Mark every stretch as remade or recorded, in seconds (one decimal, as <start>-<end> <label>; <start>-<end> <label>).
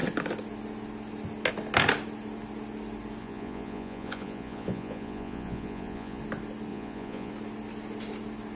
0.0-3.2 recorded; 3.2-6.2 remade; 6.2-6.7 recorded; 6.7-7.3 remade; 7.3-8.6 recorded